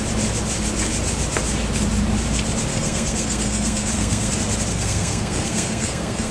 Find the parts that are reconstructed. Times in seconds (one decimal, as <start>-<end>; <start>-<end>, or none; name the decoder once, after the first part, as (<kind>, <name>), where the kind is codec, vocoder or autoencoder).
2.7-4.3 (codec, SNAC); 4.7-6.3